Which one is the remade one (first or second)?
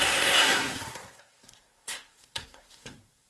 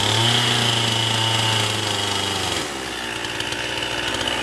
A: first